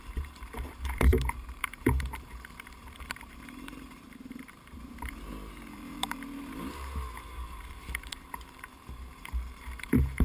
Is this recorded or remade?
remade